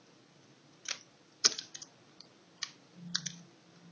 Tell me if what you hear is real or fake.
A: real